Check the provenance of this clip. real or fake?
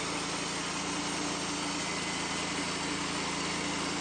real